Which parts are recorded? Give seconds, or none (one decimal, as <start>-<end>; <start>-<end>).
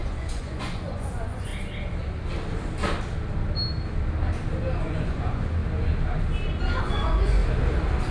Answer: 1.5-4.8; 5.6-6.8; 7.4-8.1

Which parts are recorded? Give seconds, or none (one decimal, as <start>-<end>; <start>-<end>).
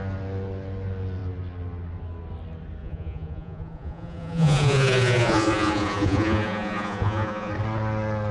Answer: 0.0-2.8; 7.5-8.3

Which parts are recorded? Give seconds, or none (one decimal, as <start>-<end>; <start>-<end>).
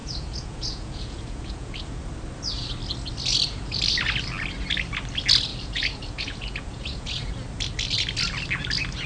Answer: 2.0-3.3; 3.8-5.5; 7.3-9.1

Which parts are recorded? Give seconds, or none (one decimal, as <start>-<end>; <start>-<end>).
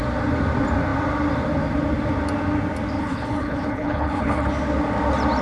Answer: 0.0-3.0; 4.5-5.4